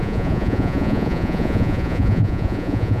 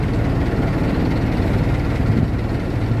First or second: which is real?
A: second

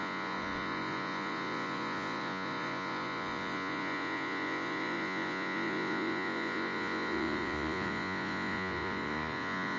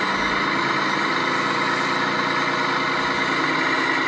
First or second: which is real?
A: second